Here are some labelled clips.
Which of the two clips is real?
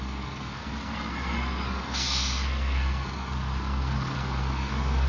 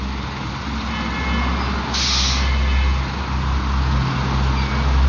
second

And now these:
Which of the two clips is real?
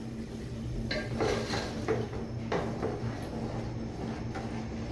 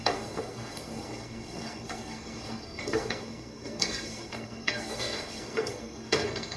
first